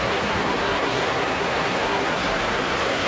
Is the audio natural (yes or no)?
no